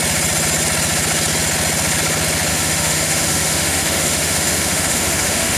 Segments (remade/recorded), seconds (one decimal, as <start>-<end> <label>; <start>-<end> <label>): 0.0-2.5 recorded; 2.5-5.6 remade